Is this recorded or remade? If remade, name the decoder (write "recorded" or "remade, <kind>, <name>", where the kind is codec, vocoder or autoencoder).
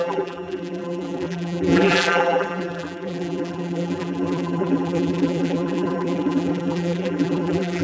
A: remade, vocoder, BigVGAN v2